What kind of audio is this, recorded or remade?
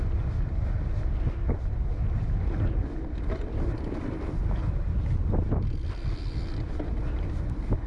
recorded